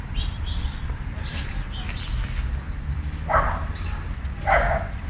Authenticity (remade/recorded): recorded